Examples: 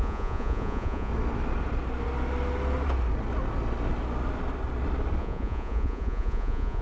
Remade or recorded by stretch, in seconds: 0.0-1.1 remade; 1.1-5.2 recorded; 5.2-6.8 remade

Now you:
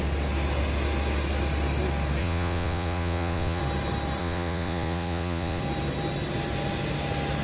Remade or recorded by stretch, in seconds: 0.0-2.2 recorded; 2.2-3.6 remade; 3.6-4.2 recorded; 4.2-5.6 remade; 5.6-7.4 recorded

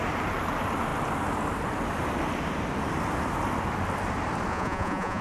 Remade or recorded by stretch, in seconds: 0.0-4.5 recorded; 4.5-5.2 remade

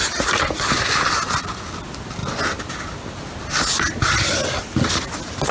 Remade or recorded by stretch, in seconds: 0.0-5.5 recorded

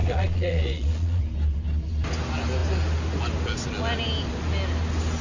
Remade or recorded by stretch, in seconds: 0.0-1.2 remade; 1.2-5.2 recorded

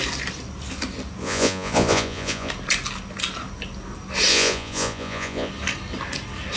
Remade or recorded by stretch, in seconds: 0.0-1.2 recorded; 1.2-2.5 remade; 2.5-4.3 recorded; 4.3-5.5 remade; 5.5-6.6 recorded

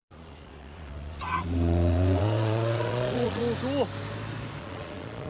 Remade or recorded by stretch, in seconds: 0.0-3.4 remade; 3.4-4.6 recorded; 4.6-5.3 remade

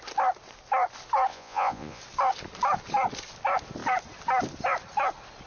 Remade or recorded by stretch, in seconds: 0.0-1.3 recorded; 1.3-2.0 remade; 2.0-5.5 recorded